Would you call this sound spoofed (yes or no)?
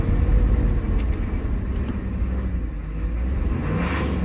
no